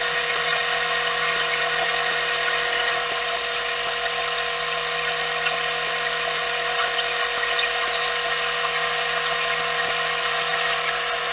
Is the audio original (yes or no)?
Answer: no